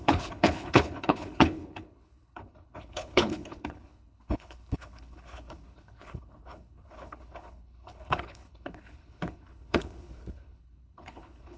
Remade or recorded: remade